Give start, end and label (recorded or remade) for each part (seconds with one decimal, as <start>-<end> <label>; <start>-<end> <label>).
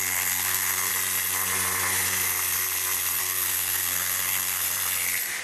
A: 0.0-0.9 remade; 0.9-3.2 recorded; 3.2-4.6 remade; 4.6-5.4 recorded